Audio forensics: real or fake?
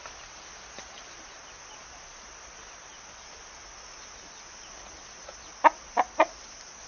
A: real